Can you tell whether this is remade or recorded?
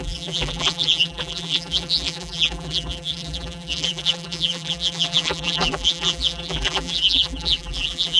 remade